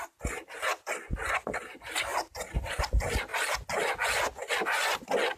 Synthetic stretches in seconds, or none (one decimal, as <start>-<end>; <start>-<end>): none